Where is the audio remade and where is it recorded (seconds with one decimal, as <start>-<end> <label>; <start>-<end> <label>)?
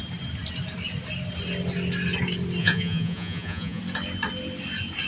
0.0-2.6 recorded; 2.6-3.8 remade; 3.8-5.1 recorded